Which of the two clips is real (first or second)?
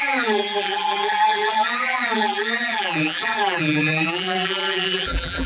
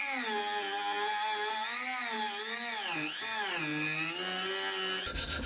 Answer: second